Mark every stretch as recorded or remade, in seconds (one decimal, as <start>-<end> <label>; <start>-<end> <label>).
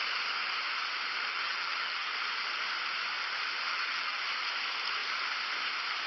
0.0-1.3 recorded; 1.3-2.1 remade; 2.1-3.7 recorded; 3.7-4.2 remade; 4.2-6.1 recorded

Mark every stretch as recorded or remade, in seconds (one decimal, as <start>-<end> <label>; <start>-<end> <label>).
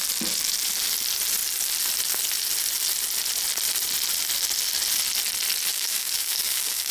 0.0-5.7 recorded; 5.7-6.9 remade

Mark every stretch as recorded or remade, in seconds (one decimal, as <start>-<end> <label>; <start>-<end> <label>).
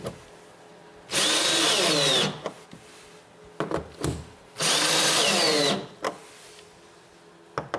0.0-7.8 recorded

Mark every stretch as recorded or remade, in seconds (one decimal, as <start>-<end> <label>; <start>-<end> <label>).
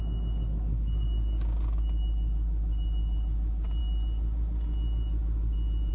0.0-5.9 recorded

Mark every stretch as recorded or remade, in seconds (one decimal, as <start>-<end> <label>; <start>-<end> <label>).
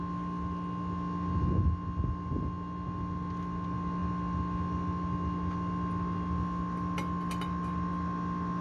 0.0-8.6 recorded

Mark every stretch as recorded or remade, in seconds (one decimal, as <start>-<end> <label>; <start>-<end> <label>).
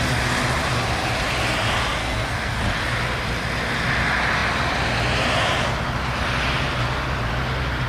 0.0-2.0 recorded; 2.0-2.6 remade; 2.6-7.9 recorded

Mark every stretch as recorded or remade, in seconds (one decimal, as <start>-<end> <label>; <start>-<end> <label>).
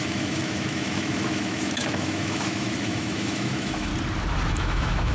0.0-3.9 remade; 3.9-4.5 recorded; 4.5-5.1 remade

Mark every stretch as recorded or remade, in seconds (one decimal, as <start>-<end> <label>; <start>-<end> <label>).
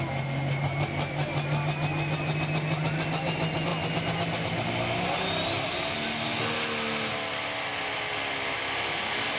0.0-9.4 recorded